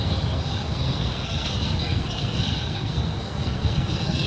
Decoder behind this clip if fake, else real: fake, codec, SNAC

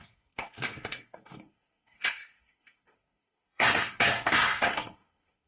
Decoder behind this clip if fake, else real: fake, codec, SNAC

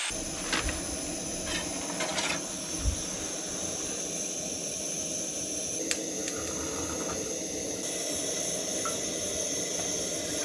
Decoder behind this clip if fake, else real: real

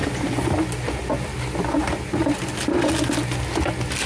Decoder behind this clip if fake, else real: real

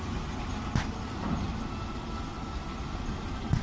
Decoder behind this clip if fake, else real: real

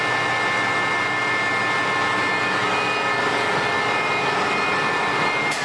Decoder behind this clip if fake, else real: real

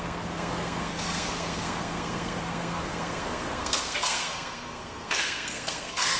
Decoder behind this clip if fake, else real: fake, codec, SNAC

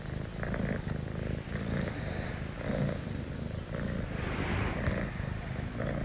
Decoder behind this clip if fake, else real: real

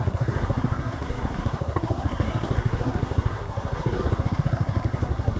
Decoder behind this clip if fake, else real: fake, codec, SNAC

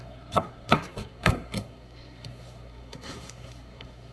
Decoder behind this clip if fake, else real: fake, codec, SNAC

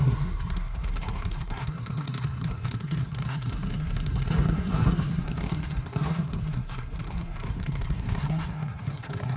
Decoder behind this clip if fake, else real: fake, codec, SNAC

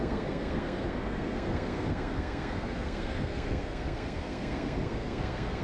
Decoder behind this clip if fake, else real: fake, codec, SNAC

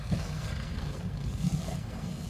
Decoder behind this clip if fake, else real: fake, codec, SNAC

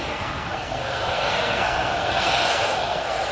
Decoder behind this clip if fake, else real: fake, codec, SNAC